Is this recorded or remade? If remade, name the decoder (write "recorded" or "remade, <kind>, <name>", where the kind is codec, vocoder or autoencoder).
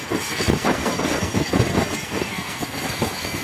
remade, codec, SNAC